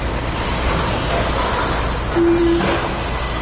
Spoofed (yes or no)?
no